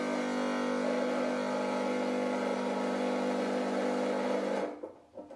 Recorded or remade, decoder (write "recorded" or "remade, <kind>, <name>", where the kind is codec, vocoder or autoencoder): recorded